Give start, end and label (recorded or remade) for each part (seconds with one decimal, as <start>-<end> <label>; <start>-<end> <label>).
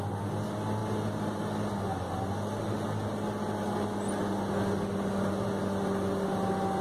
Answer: 0.0-6.8 recorded